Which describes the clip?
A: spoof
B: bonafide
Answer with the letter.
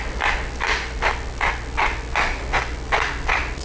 B